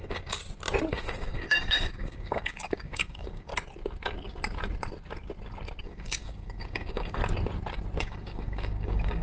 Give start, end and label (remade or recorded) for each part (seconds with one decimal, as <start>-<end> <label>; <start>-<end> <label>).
0.0-0.4 remade; 0.4-0.9 recorded; 0.9-3.5 remade; 3.5-5.8 recorded; 5.8-7.2 remade; 7.2-8.0 recorded; 8.0-9.2 remade